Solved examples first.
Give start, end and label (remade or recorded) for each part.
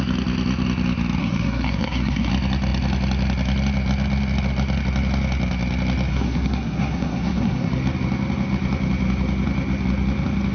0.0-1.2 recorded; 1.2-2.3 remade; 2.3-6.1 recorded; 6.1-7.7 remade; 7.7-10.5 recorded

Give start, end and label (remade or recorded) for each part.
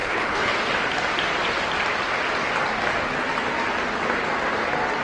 0.0-0.5 remade; 0.5-5.0 recorded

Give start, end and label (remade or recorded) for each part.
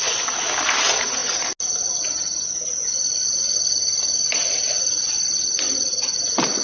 0.0-6.6 recorded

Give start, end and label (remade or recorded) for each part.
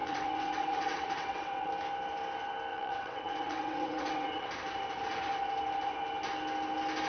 0.0-1.7 remade; 1.7-2.7 recorded; 2.7-4.5 remade; 4.5-7.1 recorded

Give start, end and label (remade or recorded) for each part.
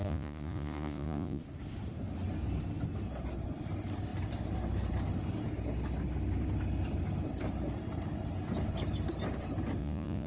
0.0-1.4 remade; 1.4-9.8 recorded; 9.8-10.3 remade